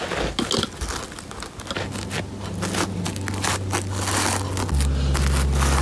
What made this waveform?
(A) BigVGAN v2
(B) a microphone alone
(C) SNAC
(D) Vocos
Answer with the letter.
B